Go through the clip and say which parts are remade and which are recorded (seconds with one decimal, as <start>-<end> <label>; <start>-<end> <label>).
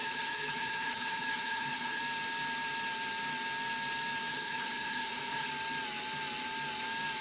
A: 0.0-2.0 remade; 2.0-4.3 recorded; 4.3-5.5 remade; 5.5-7.2 recorded